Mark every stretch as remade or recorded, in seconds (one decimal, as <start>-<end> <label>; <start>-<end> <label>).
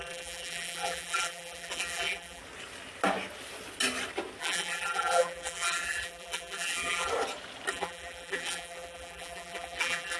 0.0-2.4 remade; 2.4-4.4 recorded; 4.4-7.1 remade; 7.1-7.7 recorded; 7.7-10.2 remade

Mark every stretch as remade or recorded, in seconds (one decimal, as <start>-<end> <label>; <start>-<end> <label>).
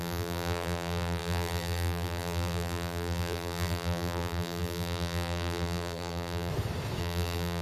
0.0-6.5 remade; 6.5-7.0 recorded; 7.0-7.6 remade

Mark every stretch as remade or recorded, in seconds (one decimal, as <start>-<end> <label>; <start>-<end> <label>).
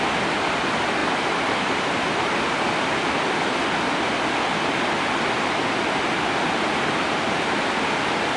0.0-8.4 recorded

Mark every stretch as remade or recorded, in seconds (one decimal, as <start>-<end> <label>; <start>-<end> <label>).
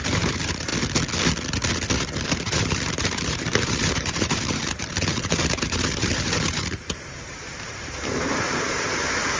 0.0-0.7 remade; 0.7-2.2 recorded; 2.2-9.4 remade